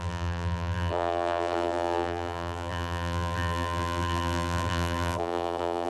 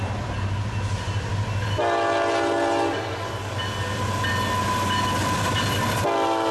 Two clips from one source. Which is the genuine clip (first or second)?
second